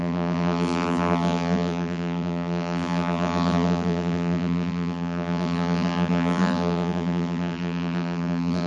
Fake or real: fake